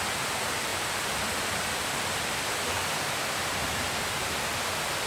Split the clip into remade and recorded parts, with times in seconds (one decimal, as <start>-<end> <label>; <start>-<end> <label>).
0.0-0.7 recorded; 0.7-3.8 remade; 3.8-5.1 recorded